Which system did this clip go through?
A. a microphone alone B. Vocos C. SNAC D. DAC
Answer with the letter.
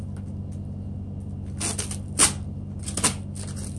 A